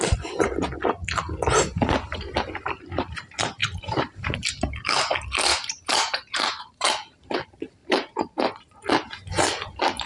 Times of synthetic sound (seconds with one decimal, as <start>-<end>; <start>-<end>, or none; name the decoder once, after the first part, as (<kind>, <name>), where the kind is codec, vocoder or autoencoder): 2.1-3.2 (vocoder, BigVGAN v2); 3.6-4.3; 5.5-6.9; 7.8-8.8